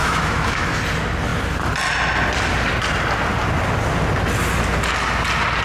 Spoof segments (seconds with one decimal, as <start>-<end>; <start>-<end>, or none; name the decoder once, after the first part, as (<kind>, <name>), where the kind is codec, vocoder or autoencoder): 0.0-0.8 (autoencoder, DAC-VAE)